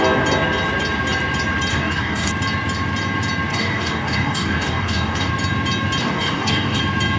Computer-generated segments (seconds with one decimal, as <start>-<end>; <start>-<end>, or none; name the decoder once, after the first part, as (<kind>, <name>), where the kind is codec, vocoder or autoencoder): 1.7-2.3 (codec, DAC); 3.5-5.3; 6.0-6.8